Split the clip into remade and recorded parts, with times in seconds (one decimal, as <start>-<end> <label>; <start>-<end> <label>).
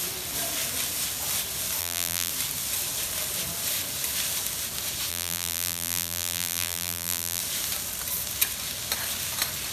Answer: 0.0-1.8 recorded; 1.8-2.3 remade; 2.3-5.1 recorded; 5.1-7.4 remade; 7.4-9.7 recorded